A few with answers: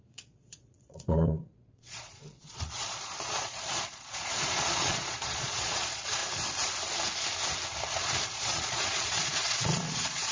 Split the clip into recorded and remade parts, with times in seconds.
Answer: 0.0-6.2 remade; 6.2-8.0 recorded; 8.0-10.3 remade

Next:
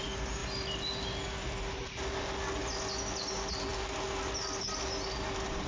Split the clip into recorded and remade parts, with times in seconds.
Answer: 0.0-5.7 recorded

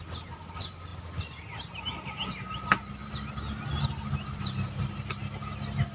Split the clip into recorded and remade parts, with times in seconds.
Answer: 0.0-5.9 recorded

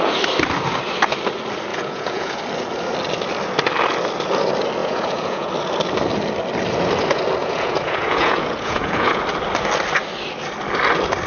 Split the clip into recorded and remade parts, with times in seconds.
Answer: 0.0-1.7 recorded; 1.7-2.4 remade; 2.4-4.8 recorded; 4.8-5.5 remade; 5.5-7.4 recorded; 7.4-9.2 remade; 9.2-11.3 recorded

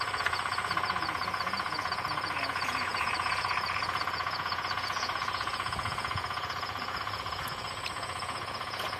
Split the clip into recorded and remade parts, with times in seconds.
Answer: 0.0-9.0 remade

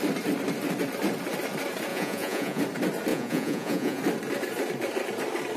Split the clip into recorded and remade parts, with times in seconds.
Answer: 0.0-1.9 recorded; 1.9-2.6 remade; 2.6-3.1 recorded; 3.1-4.0 remade; 4.0-5.6 recorded